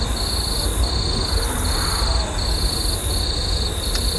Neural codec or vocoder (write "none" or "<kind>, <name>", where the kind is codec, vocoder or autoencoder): none